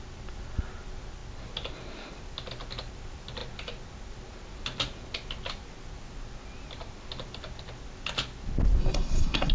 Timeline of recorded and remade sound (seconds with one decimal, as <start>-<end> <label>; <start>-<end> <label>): 0.0-8.8 recorded; 8.8-9.5 remade